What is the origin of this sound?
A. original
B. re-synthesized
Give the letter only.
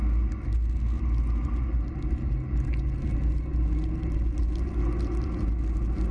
A